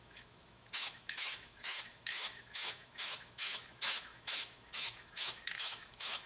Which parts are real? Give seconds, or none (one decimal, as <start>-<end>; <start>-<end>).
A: none